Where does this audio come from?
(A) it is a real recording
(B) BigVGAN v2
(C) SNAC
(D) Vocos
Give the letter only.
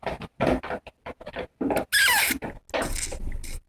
A